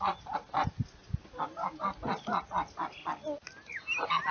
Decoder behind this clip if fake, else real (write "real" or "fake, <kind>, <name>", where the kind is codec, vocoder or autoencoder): real